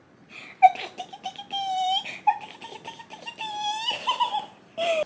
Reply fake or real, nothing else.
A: real